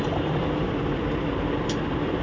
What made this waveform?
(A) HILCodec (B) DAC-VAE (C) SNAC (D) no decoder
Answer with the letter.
D